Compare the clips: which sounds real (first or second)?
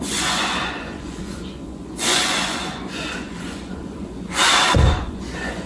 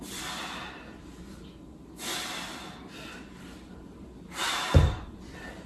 second